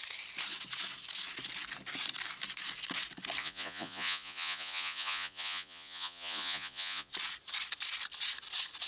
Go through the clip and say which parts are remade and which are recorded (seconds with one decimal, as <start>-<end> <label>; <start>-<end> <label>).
0.0-3.4 recorded; 3.4-7.1 remade; 7.1-8.9 recorded